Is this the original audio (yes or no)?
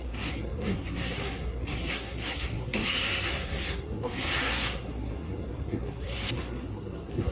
no